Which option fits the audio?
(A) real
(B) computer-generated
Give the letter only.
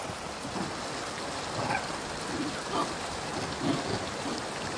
A